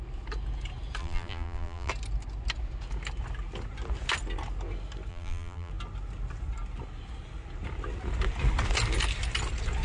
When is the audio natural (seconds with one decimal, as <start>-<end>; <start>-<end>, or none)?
0.0-1.0; 1.9-5.1; 5.7-9.8